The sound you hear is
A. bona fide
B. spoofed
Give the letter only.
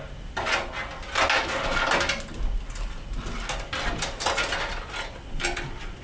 A